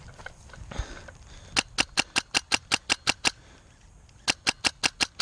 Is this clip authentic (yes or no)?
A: yes